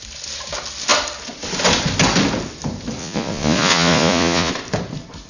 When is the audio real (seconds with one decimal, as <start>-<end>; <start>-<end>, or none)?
0.0-3.0; 4.5-5.3